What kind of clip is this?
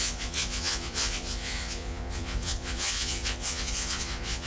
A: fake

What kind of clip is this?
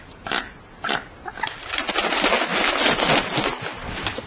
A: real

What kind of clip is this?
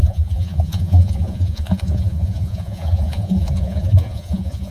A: fake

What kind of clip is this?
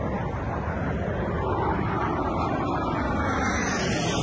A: real